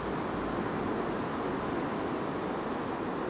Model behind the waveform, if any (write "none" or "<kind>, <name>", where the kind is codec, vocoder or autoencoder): none